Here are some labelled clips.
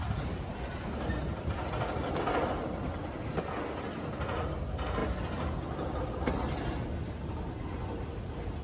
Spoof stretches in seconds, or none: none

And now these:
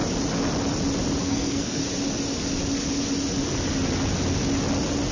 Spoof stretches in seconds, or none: 1.2-1.8 (codec, SNAC)